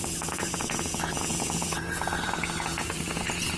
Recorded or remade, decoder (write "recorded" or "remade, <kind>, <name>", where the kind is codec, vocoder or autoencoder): remade, vocoder, Vocos